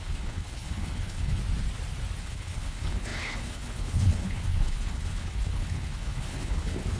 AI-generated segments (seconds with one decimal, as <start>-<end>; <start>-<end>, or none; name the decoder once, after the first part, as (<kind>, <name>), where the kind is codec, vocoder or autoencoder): 0.0-1.4 (codec, HILCodec); 2.2-7.0